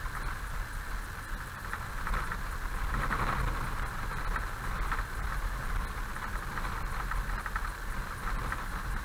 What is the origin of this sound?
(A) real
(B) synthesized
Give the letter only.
A